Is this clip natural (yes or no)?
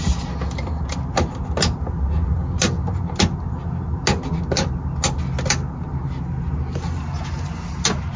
yes